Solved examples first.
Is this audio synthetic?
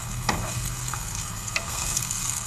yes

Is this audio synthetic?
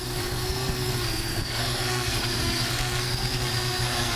yes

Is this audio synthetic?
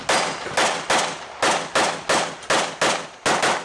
no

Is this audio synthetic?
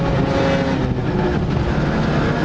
no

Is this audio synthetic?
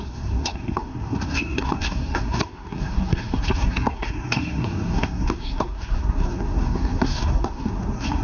yes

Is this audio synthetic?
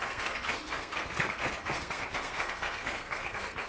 yes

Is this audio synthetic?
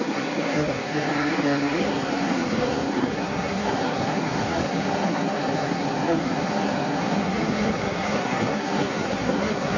yes